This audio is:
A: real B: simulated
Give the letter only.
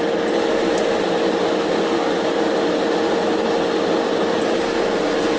A